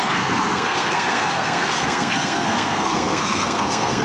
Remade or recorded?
remade